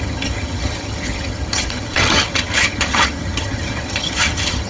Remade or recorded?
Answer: remade